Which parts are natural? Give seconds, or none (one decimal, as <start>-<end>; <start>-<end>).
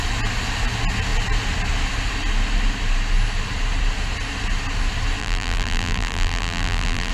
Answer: 0.0-5.2